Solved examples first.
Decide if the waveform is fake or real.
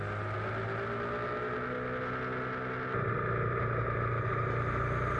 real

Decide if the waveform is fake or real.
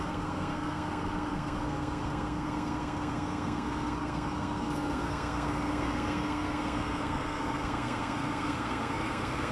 fake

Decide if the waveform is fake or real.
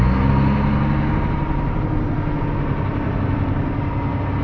real